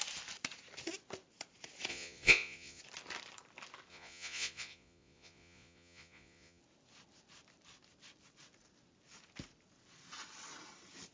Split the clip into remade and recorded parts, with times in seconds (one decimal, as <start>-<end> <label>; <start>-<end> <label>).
0.0-1.9 recorded; 1.9-2.8 remade; 2.8-3.9 recorded; 3.9-6.6 remade; 6.6-11.1 recorded